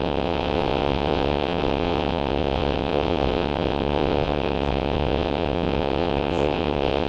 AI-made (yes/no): yes